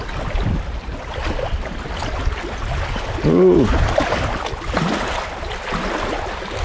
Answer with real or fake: real